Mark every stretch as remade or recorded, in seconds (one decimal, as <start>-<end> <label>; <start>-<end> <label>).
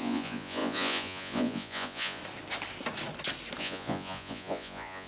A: 0.0-2.2 remade; 2.2-3.6 recorded; 3.6-5.1 remade